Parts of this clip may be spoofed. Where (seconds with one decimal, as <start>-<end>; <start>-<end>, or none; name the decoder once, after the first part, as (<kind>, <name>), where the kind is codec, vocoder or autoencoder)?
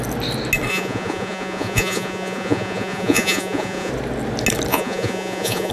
0.7-3.9 (vocoder, Vocos); 4.7-5.7